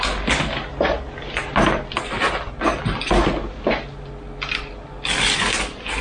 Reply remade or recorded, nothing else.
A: recorded